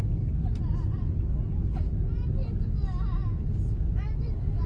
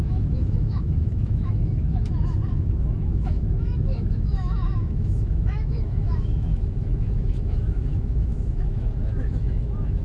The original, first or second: first